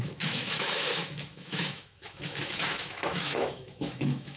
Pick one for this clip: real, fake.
fake